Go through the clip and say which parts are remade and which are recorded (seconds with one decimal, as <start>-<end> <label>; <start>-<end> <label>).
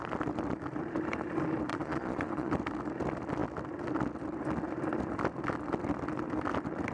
0.0-1.7 recorded; 1.7-2.5 remade; 2.5-6.9 recorded